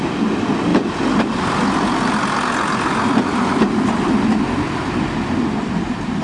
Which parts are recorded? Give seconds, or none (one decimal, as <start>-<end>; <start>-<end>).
0.0-6.2